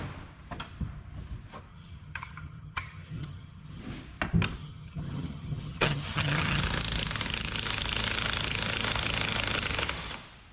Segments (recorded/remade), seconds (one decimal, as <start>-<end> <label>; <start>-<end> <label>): 0.0-1.7 recorded; 1.7-3.8 remade; 3.8-4.6 recorded; 4.6-6.6 remade; 6.6-10.5 recorded